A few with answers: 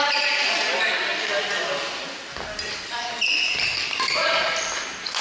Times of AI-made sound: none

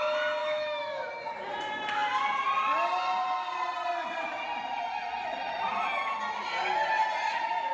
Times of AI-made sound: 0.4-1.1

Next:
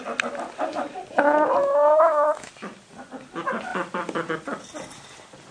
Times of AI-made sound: 1.6-2.5

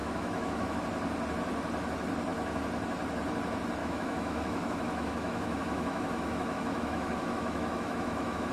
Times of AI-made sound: 0.0-0.8; 3.8-8.5